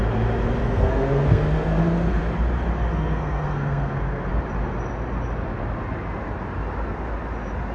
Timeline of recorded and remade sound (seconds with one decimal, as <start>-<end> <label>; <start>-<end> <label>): 0.0-0.6 recorded; 0.6-2.2 remade; 2.2-2.9 recorded; 2.9-4.3 remade; 4.3-7.7 recorded